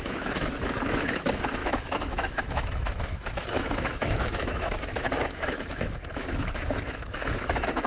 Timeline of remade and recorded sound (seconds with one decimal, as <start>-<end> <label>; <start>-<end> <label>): 0.0-7.9 remade